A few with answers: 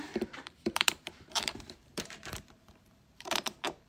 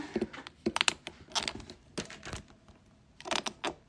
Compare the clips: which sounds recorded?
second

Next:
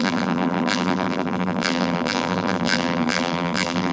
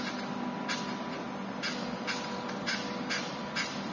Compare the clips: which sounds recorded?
second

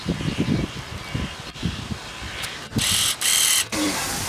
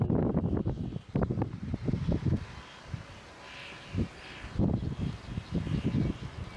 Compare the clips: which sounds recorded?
second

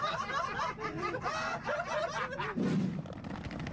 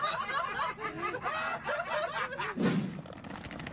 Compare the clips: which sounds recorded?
second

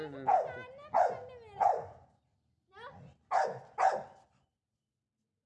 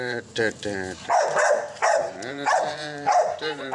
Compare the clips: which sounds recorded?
first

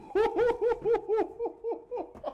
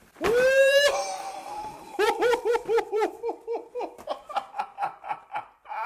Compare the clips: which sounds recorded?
first